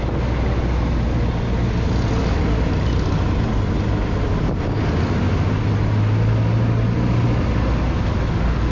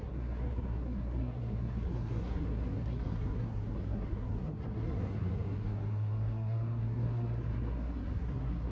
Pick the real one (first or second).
first